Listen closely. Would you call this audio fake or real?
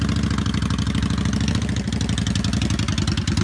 real